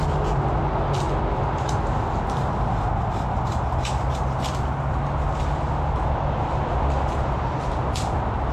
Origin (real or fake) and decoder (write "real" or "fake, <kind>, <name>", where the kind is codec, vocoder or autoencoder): real